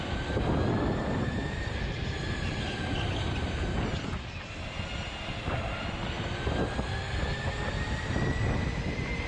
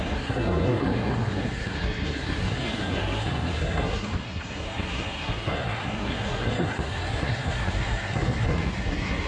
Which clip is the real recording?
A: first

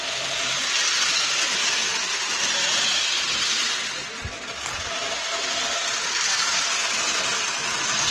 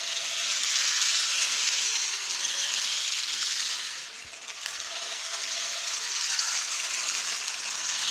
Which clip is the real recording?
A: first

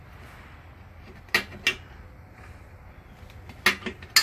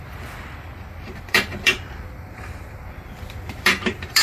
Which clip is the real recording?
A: first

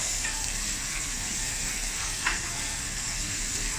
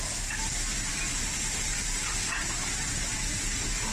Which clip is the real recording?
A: second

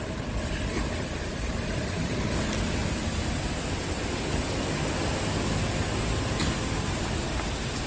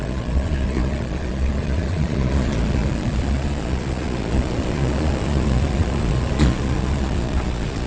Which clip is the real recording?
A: first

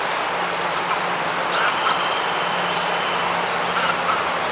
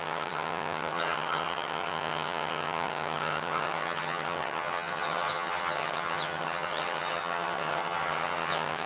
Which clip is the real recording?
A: first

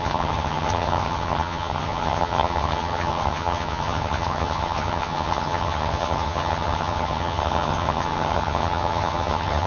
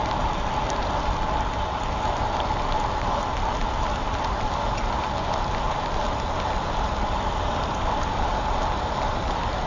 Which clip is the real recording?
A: second